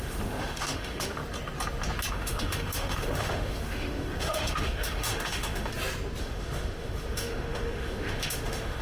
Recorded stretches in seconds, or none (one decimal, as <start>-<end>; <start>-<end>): 1.2-2.1; 5.7-6.2